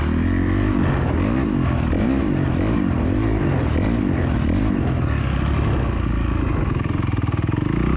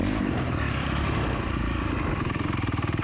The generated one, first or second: second